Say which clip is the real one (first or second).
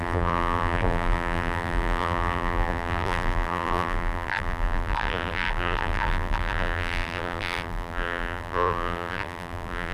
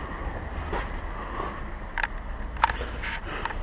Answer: second